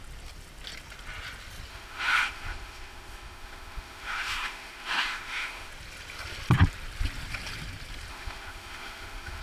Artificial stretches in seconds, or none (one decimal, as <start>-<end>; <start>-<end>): 1.7-5.7; 8.1-9.4